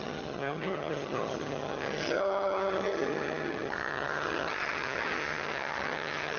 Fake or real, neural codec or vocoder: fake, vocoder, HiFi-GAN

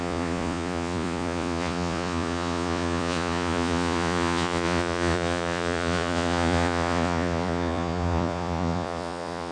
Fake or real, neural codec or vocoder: fake, vocoder, Vocos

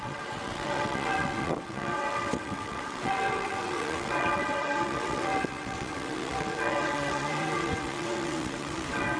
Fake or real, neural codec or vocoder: fake, vocoder, WaveNeXt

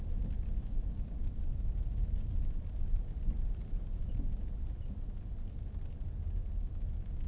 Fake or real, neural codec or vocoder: fake, vocoder, BigVGAN v2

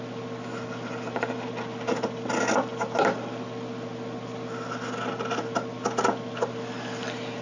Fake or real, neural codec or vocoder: real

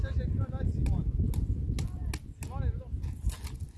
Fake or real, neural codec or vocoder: real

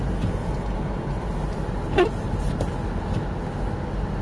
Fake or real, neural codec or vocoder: real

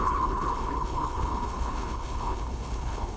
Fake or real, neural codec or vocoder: fake, codec, HILCodec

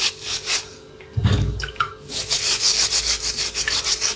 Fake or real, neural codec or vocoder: fake, codec, DAC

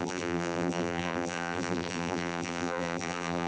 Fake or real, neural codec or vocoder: fake, vocoder, BigVGAN v2